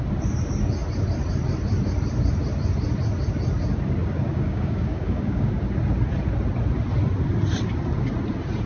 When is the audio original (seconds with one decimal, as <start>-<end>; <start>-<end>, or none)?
0.0-4.0; 5.5-8.7